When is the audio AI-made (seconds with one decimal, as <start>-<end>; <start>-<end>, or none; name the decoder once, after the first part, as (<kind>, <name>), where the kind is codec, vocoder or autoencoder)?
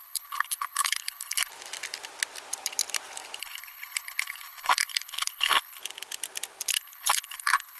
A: 0.0-1.5 (codec, HILCodec); 3.4-5.8; 6.7-7.8